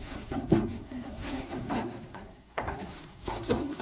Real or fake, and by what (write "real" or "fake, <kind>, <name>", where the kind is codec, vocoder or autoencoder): fake, codec, SNAC